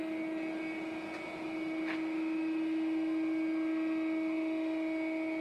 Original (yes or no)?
yes